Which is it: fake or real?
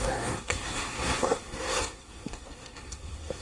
fake